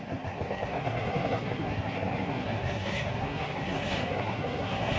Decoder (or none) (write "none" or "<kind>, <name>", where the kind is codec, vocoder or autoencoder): codec, SNAC